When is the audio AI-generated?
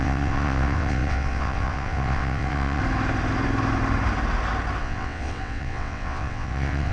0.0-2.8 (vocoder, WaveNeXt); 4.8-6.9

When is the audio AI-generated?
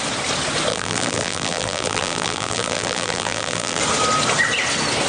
0.7-3.8 (vocoder, BigVGAN v2)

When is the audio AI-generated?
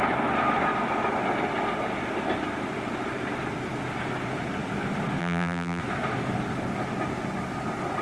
5.2-5.8 (vocoder, BigVGAN v2)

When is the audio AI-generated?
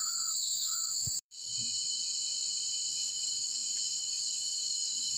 0.0-1.5 (codec, DAC); 2.9-5.2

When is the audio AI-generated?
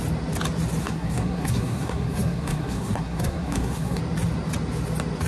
0.8-4.0 (codec, SNAC)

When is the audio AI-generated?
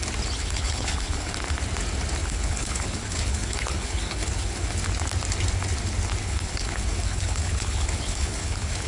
0.4-1.3 (codec, HILCodec); 2.2-4.8; 6.2-8.9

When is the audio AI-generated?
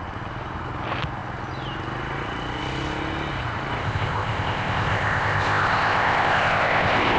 3.8-7.2 (codec, ZipCodec)